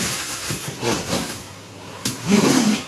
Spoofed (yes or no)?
yes